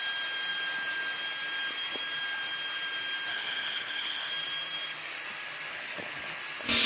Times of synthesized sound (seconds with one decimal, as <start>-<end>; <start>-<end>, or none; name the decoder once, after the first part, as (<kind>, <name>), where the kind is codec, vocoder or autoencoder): 3.3-4.3 (codec, HILCodec); 5.7-6.4